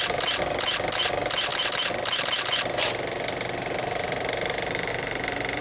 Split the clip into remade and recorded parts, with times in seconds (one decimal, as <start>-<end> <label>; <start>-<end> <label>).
0.0-1.5 recorded; 1.5-4.9 remade; 4.9-5.6 recorded